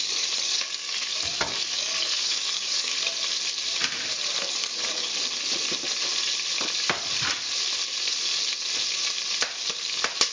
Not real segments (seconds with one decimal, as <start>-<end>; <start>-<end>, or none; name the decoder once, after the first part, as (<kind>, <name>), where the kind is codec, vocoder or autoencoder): 0.0-2.9 (codec, DAC); 4.5-5.1